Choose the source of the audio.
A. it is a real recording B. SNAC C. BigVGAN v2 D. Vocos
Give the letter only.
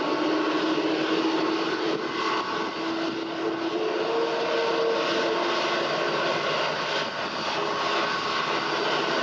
A